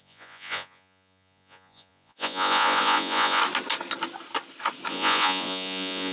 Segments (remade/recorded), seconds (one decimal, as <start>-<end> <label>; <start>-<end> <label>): 0.0-3.4 remade; 3.4-4.9 recorded; 4.9-6.1 remade